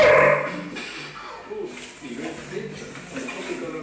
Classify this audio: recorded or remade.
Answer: recorded